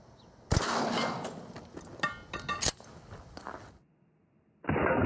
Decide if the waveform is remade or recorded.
recorded